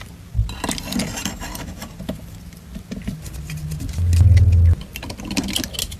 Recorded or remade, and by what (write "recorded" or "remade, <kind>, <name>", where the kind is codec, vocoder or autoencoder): recorded